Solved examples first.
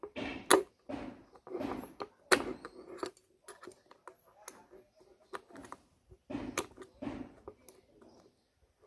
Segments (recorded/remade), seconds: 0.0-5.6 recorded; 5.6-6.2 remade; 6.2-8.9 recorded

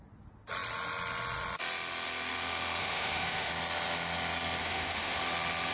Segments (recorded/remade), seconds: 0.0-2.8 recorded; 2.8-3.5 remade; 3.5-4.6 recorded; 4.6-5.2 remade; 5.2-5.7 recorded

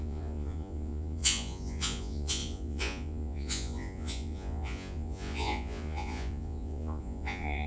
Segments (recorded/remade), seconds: 0.0-7.7 remade